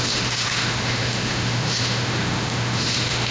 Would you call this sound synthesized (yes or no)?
yes